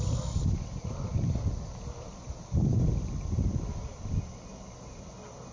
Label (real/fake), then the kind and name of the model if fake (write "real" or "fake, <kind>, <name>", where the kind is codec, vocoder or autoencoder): real